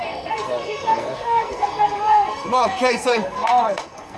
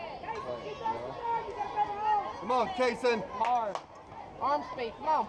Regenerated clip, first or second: first